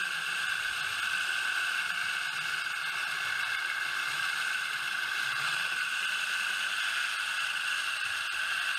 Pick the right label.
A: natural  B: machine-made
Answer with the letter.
A